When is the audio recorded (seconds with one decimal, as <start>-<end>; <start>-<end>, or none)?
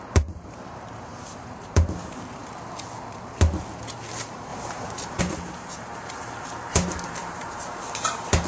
2.4-4.1